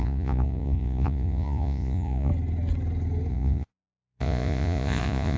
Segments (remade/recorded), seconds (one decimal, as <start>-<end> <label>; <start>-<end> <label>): 0.0-2.3 remade; 2.3-3.3 recorded; 3.3-5.4 remade